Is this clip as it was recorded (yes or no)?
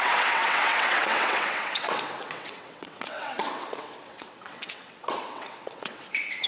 no